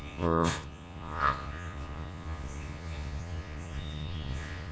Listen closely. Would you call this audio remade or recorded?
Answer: remade